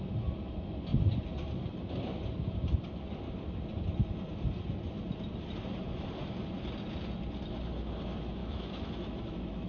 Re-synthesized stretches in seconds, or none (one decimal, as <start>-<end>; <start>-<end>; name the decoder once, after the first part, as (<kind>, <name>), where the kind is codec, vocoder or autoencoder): 8.4-9.7 (autoencoder, DAC-VAE)